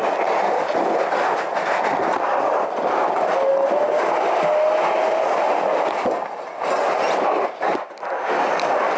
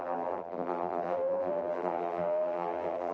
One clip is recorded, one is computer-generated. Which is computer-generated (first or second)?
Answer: second